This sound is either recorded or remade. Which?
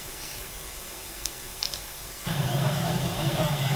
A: remade